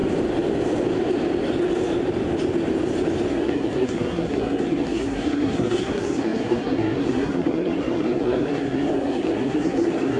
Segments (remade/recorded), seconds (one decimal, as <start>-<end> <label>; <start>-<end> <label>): 0.0-3.3 recorded; 3.3-10.2 remade